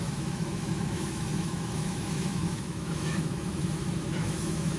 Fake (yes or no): yes